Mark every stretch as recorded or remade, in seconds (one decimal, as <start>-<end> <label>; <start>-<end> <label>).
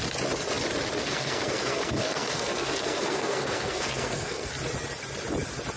0.0-1.0 recorded; 1.0-4.5 remade; 4.5-5.8 recorded